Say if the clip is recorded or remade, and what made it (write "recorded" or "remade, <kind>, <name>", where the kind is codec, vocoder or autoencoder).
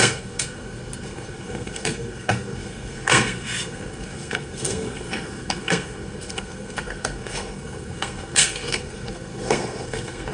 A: remade, codec, SNAC